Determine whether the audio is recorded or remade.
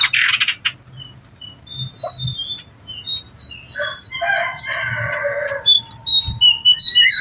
recorded